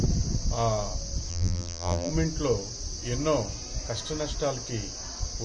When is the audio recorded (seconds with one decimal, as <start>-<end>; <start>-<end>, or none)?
0.0-1.3; 2.1-5.4